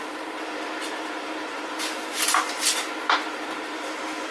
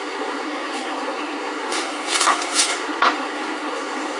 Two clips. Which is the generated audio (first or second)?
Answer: second